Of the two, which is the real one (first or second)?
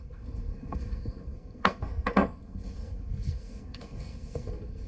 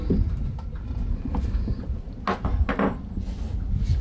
second